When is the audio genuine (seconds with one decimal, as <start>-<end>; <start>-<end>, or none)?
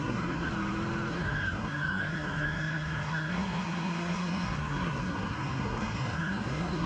0.5-1.1